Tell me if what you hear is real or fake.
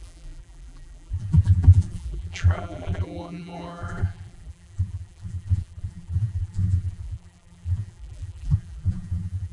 fake